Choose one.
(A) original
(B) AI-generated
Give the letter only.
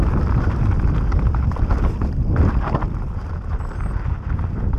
A